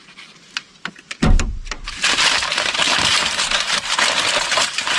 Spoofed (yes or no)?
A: yes